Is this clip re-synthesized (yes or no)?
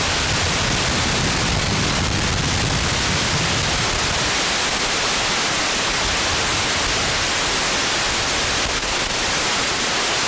no